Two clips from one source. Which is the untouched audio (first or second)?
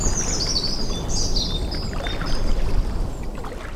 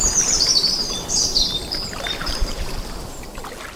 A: first